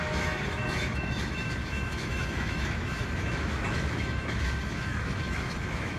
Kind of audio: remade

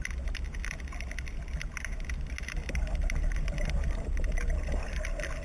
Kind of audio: recorded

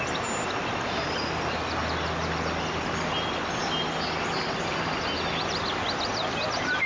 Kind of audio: recorded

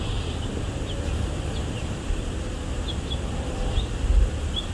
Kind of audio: recorded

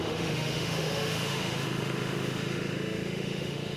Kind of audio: remade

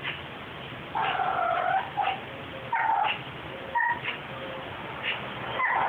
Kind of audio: recorded